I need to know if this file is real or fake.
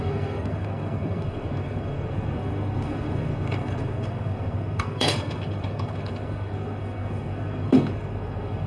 fake